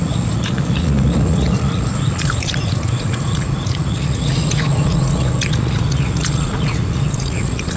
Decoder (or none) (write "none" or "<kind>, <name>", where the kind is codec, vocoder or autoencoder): vocoder, Vocos